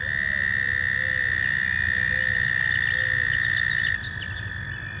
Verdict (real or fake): real